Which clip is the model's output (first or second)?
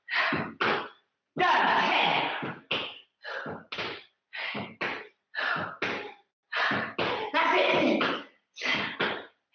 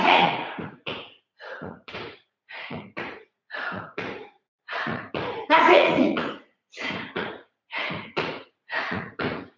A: second